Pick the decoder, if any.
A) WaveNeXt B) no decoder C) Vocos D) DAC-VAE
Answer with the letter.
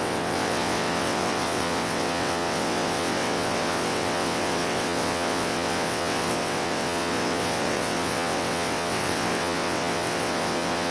A